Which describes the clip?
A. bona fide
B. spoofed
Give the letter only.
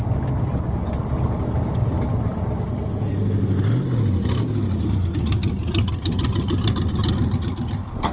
A